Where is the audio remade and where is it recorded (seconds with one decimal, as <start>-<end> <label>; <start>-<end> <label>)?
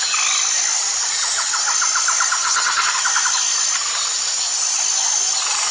0.0-2.4 recorded; 2.4-2.9 remade; 2.9-5.7 recorded